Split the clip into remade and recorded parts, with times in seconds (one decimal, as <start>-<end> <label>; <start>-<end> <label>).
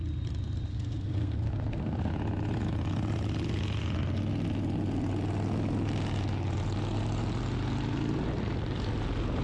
0.0-0.7 recorded; 0.7-2.1 remade; 2.1-9.4 recorded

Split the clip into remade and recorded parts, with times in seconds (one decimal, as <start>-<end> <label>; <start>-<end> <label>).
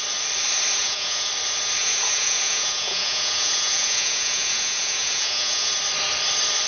0.0-0.8 recorded; 0.8-1.3 remade; 1.3-1.8 recorded; 1.8-5.7 remade; 5.7-6.7 recorded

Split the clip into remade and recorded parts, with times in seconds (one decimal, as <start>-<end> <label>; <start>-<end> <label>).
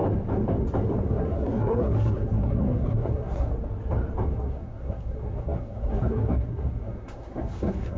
0.0-1.1 recorded; 1.1-3.5 remade; 3.5-4.4 recorded; 4.4-8.0 remade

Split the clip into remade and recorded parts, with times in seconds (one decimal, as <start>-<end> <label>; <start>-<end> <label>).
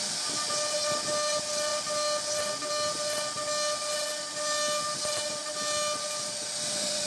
0.0-7.1 recorded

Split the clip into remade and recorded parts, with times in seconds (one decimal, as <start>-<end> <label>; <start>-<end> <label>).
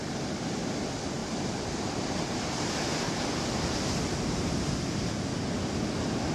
0.0-6.3 recorded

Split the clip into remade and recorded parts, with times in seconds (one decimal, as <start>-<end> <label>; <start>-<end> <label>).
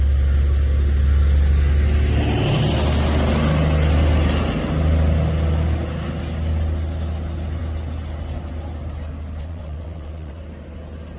0.0-9.4 recorded; 9.4-10.4 remade; 10.4-11.2 recorded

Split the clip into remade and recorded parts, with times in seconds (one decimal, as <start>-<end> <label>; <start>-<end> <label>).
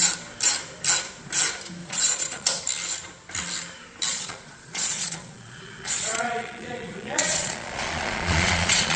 0.0-1.8 recorded; 1.8-2.6 remade; 2.6-4.1 recorded; 4.1-9.0 remade